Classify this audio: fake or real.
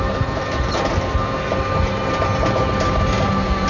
real